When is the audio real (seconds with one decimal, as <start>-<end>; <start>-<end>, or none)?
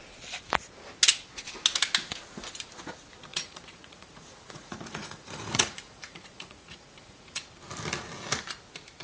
0.0-3.3; 7.5-9.0